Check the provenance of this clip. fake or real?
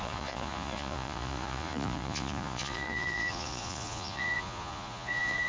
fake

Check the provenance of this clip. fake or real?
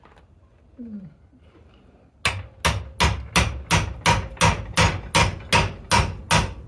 real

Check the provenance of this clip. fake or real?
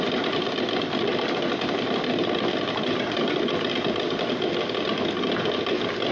real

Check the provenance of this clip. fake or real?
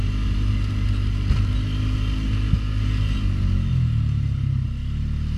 real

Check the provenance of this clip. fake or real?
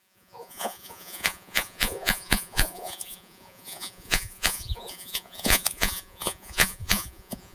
fake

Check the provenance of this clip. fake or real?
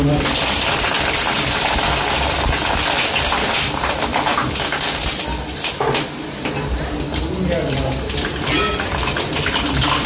real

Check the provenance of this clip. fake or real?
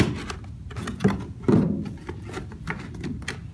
real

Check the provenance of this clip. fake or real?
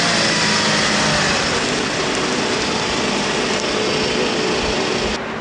real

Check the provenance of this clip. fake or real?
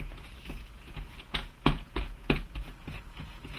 fake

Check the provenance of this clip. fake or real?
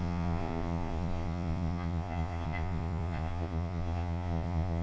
fake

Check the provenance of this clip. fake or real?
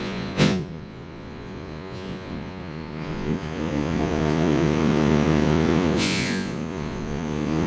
fake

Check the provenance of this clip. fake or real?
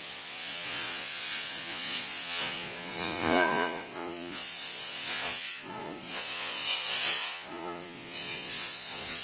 fake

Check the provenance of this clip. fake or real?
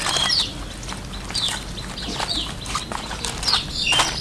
real